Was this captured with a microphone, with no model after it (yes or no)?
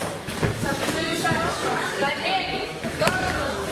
no